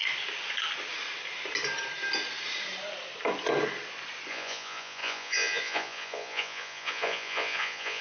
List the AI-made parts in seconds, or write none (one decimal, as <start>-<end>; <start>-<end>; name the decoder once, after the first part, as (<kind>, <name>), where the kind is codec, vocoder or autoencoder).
4.3-8.0 (vocoder, Vocos)